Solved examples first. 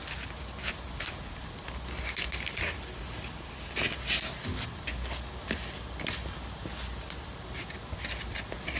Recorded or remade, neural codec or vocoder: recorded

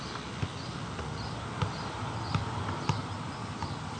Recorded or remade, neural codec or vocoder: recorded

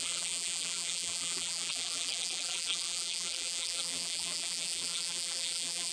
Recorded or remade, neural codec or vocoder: remade, vocoder, BigVGAN v2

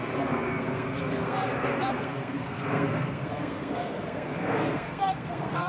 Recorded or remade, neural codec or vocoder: remade, codec, SNAC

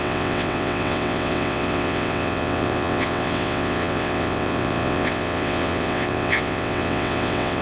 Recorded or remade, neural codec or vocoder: remade, vocoder, WaveNeXt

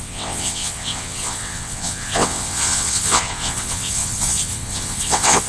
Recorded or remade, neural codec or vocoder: remade, vocoder, WaveNeXt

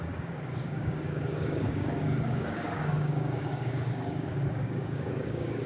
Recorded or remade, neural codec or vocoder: remade, codec, DAC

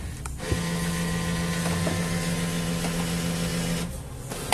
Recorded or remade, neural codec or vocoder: recorded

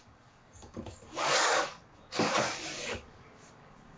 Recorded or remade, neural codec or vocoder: remade, codec, DAC